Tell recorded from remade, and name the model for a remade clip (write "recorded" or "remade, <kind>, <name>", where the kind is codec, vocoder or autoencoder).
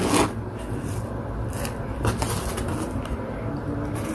recorded